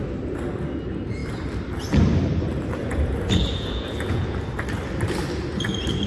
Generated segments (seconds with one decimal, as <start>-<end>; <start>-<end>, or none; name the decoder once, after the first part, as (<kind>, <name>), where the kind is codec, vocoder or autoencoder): 2.8-4.4 (vocoder, Vocos)